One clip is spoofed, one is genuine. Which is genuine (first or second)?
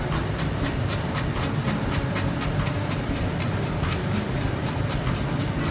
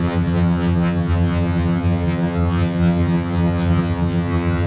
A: first